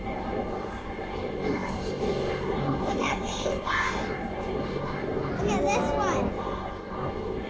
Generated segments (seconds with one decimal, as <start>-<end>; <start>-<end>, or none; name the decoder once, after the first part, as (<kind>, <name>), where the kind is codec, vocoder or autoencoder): 0.0-5.3 (codec, SNAC); 6.3-7.5

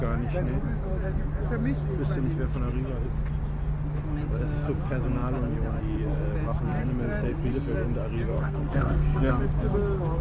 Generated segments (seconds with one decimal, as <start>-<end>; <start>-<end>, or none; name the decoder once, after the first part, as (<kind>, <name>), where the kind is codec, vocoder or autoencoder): 8.3-9.3 (codec, SNAC)